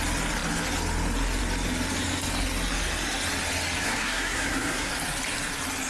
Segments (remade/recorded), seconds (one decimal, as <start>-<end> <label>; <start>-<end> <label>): 0.0-3.8 recorded; 3.8-4.9 remade; 4.9-5.9 recorded

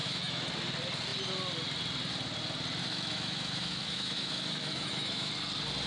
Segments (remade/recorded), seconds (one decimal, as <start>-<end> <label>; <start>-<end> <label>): 0.0-0.5 remade; 0.5-2.8 recorded; 2.8-5.3 remade; 5.3-5.9 recorded

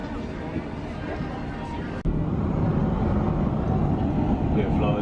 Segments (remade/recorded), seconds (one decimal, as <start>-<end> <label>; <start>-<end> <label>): 0.0-5.0 recorded

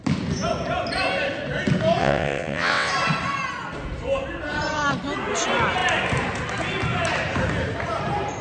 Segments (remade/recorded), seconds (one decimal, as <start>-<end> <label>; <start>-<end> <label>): 0.0-2.0 recorded; 2.0-2.9 remade; 2.9-8.4 recorded

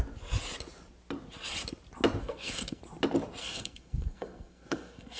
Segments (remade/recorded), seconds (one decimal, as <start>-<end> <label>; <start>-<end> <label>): 0.0-2.2 recorded; 2.2-2.8 remade; 2.8-3.4 recorded; 3.4-5.2 remade

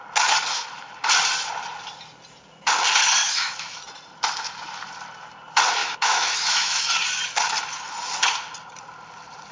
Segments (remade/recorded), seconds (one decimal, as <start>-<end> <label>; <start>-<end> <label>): 0.0-3.2 recorded; 3.2-3.8 remade; 3.8-5.8 recorded; 5.8-6.9 remade; 6.9-9.5 recorded